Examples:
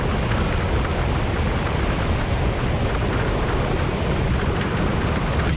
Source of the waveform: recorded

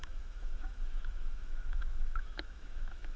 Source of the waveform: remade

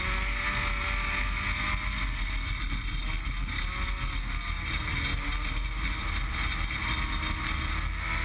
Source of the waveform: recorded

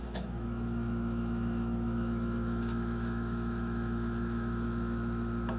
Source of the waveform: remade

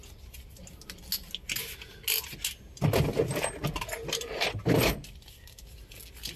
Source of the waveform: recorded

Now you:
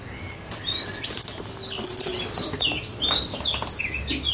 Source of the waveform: recorded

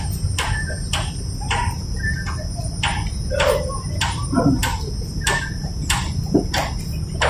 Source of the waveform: recorded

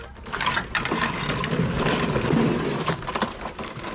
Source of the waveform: recorded